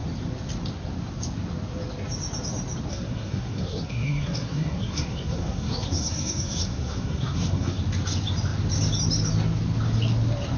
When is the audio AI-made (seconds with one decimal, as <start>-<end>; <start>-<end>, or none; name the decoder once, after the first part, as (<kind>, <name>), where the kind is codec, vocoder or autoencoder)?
2.9-7.8 (codec, SNAC)